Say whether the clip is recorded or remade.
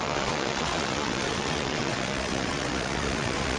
remade